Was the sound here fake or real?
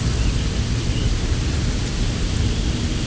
real